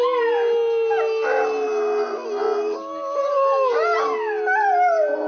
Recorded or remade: recorded